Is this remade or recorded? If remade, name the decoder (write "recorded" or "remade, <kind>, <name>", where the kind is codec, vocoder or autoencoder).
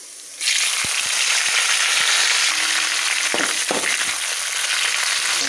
recorded